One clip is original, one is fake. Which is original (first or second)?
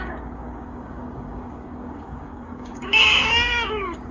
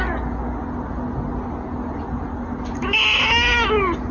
second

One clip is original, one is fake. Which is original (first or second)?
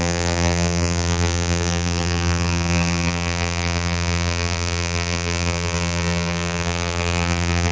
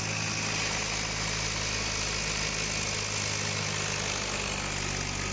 second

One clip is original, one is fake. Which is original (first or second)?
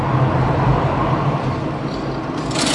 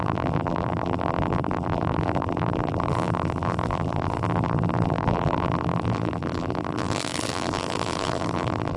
first